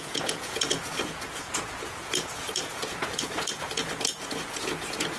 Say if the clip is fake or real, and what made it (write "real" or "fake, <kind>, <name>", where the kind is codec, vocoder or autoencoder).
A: fake, vocoder, Vocos